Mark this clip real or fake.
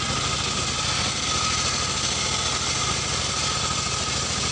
real